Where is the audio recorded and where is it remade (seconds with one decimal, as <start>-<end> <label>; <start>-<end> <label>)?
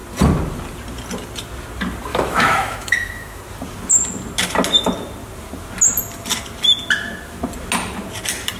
0.0-2.1 recorded; 2.1-3.4 remade; 3.4-8.6 recorded